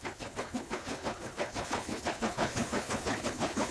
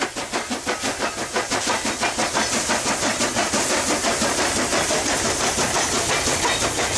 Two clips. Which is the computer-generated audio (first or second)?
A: first